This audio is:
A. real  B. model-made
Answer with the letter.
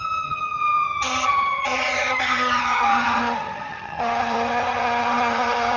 B